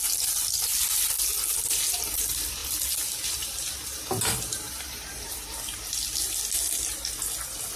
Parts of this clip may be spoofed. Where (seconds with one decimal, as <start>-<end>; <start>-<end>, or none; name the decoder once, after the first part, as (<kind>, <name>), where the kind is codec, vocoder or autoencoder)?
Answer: none